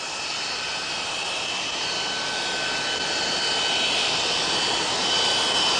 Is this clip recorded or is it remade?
recorded